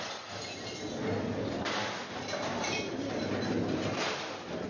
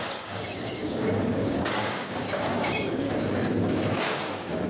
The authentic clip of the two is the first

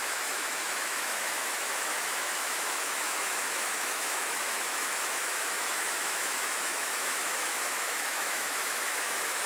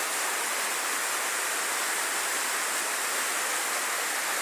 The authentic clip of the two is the second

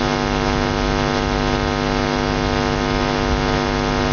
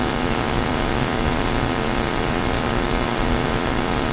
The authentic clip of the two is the first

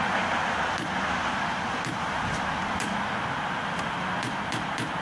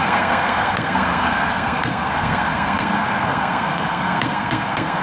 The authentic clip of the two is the first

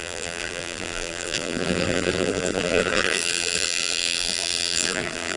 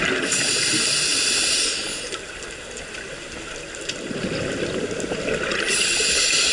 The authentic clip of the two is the second